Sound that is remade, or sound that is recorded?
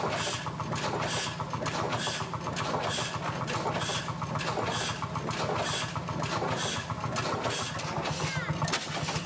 recorded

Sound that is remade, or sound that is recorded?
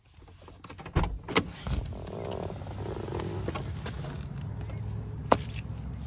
recorded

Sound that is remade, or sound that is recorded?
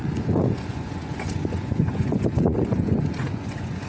remade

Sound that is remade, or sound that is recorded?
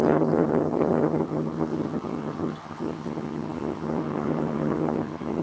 remade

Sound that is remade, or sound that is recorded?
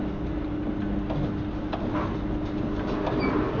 recorded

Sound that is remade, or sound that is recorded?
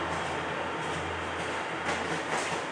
recorded